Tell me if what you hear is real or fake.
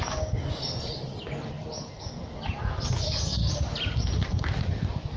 real